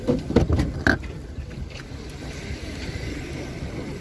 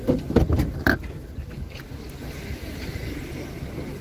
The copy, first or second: first